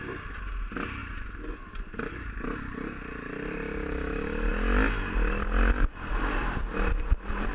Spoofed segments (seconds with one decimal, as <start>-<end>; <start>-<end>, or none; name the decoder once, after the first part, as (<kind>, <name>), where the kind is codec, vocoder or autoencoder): none